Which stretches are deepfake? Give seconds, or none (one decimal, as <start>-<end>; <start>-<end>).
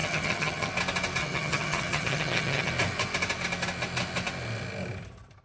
0.0-0.7; 1.2-2.7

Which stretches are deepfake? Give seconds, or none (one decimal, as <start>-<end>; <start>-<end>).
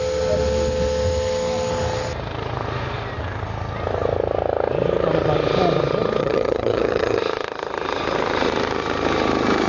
6.2-7.2